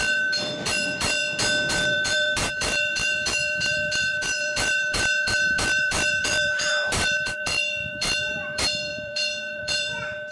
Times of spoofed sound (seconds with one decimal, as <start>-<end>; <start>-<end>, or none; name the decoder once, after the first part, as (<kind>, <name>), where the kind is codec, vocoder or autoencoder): 0.0-1.2 (vocoder, BigVGAN v2); 1.7-10.3